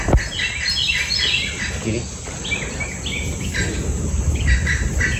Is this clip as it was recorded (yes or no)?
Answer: yes